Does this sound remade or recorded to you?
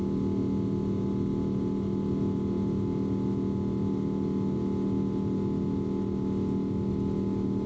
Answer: recorded